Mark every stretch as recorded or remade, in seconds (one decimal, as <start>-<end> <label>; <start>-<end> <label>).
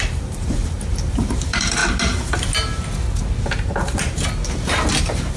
0.0-1.8 remade; 1.8-5.0 recorded; 5.0-5.4 remade